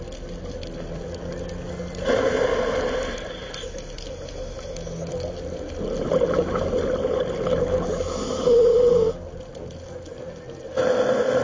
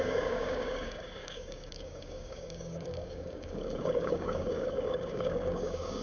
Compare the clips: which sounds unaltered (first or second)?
first